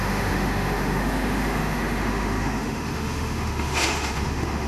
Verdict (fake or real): fake